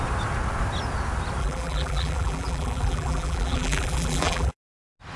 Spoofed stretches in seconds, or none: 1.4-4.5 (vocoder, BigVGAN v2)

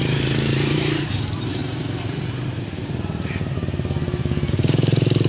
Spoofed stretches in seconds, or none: 0.0-1.6 (vocoder, BigVGAN v2); 4.5-5.3